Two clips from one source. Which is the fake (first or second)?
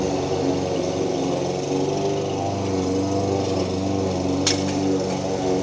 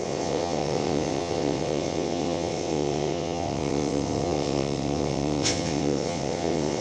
second